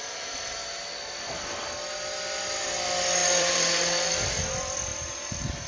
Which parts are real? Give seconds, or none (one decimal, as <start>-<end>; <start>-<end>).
0.0-3.2; 4.3-4.9